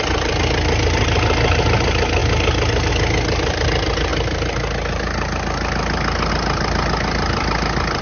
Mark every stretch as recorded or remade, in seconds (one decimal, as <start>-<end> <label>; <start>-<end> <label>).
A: 0.0-8.0 recorded